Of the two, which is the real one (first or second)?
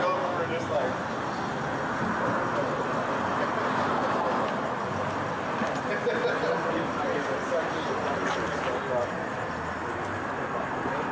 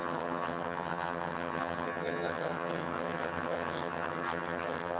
first